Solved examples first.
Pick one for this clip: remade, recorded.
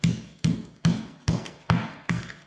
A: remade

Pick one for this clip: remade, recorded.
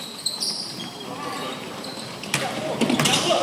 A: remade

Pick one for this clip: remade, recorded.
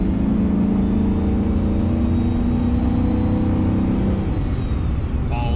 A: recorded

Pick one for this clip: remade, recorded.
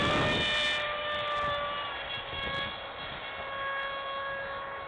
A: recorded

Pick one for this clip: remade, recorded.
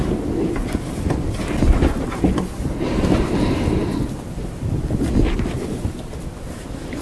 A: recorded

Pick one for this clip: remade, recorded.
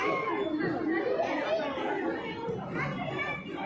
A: recorded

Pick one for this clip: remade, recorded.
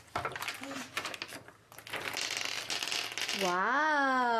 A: recorded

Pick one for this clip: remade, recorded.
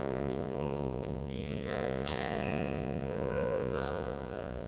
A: remade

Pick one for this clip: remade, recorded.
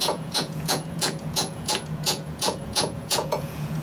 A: remade